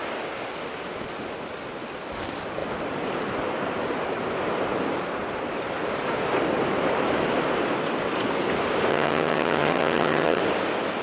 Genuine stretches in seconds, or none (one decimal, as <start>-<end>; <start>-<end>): 0.0-8.9; 10.4-11.0